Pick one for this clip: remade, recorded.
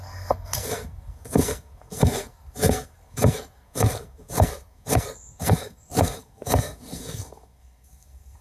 remade